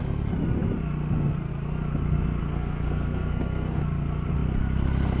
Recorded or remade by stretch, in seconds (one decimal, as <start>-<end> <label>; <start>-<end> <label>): 0.0-2.4 recorded; 2.4-3.8 remade; 3.8-5.2 recorded